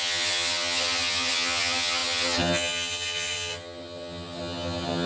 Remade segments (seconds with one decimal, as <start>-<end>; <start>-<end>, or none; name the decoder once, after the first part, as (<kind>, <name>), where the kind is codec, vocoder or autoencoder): 0.0-5.1 (vocoder, HiFi-GAN)